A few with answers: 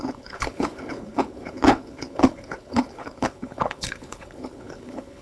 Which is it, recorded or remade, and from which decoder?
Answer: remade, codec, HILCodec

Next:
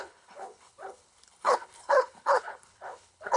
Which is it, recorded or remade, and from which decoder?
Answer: remade, codec, HILCodec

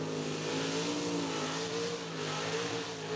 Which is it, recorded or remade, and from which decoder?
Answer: recorded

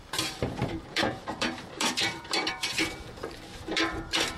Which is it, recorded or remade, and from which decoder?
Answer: remade, vocoder, BigVGAN v2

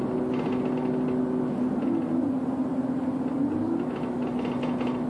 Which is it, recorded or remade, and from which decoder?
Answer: recorded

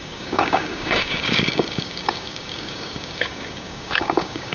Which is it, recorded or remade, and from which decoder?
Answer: remade, codec, DAC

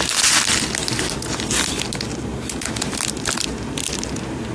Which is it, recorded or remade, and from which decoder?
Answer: recorded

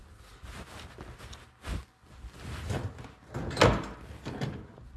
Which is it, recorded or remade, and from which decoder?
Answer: recorded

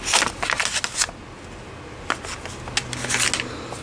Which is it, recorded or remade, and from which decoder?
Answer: recorded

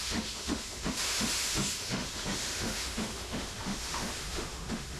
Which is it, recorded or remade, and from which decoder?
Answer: remade, autoencoder, DAC-VAE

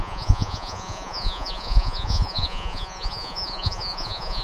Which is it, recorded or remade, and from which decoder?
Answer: remade, vocoder, Vocos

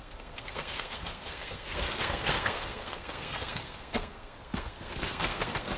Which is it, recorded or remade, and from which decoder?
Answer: remade, codec, SNAC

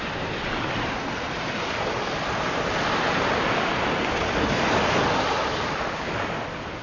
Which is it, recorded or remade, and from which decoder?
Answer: recorded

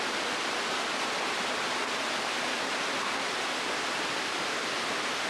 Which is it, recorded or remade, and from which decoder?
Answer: recorded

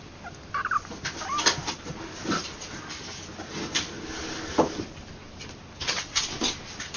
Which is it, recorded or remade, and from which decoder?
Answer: recorded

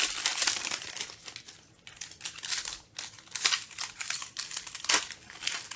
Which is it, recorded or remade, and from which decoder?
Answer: remade, vocoder, BigVGAN v2